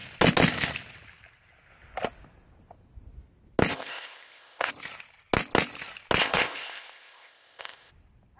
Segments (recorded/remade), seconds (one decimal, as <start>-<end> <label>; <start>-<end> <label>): 0.0-3.7 recorded; 3.7-4.7 remade; 4.7-6.2 recorded; 6.2-7.9 remade; 7.9-8.4 recorded